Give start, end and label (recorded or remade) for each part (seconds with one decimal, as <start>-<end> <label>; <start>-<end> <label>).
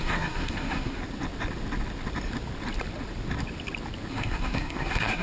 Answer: 0.0-1.0 remade; 1.0-4.1 recorded; 4.1-5.2 remade